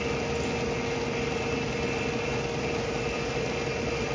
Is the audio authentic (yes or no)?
yes